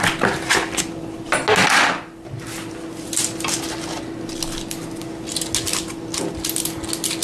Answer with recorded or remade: recorded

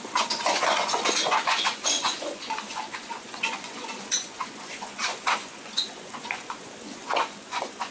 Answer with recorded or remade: remade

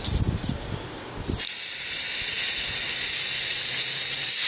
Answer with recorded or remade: recorded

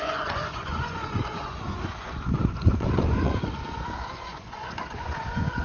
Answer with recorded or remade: remade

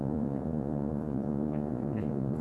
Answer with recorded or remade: remade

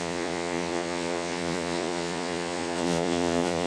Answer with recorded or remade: remade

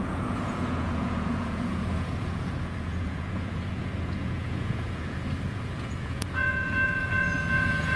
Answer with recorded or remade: remade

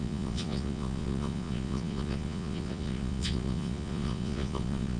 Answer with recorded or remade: remade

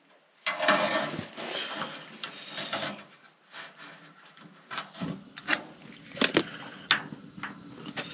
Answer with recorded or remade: recorded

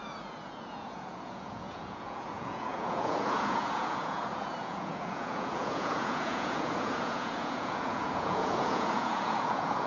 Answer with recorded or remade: remade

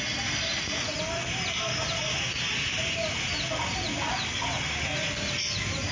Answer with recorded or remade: recorded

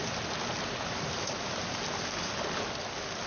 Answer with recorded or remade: recorded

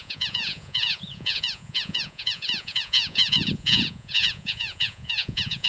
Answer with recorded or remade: remade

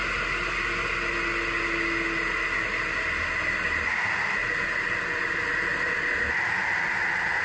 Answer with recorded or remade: recorded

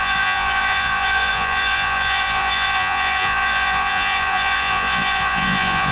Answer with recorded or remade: remade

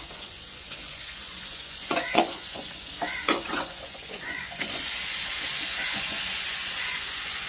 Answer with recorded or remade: remade